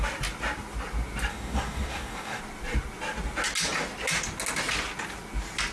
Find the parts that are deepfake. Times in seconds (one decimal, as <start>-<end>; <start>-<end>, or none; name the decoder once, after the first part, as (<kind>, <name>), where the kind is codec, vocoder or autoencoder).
1.3-2.4 (codec, DAC)